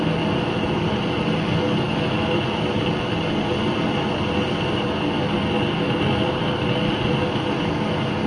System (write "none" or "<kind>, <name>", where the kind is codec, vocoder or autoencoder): none